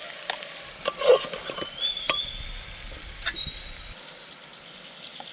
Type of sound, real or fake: real